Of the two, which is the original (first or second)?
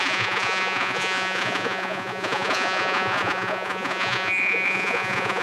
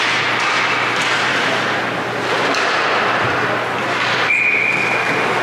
second